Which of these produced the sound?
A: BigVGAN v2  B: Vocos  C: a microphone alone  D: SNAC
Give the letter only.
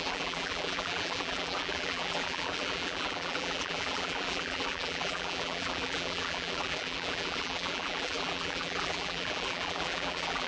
A